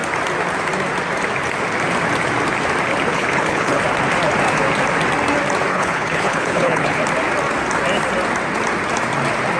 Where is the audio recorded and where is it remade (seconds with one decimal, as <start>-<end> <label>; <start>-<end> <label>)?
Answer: 0.0-3.1 recorded; 3.1-3.8 remade; 3.8-5.7 recorded; 5.7-7.0 remade; 7.0-9.6 recorded